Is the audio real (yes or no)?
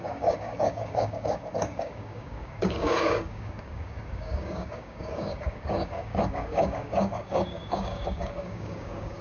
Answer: no